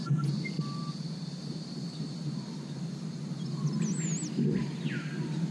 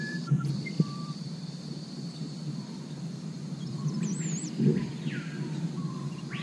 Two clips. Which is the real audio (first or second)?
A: first